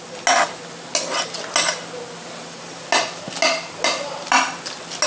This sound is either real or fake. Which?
real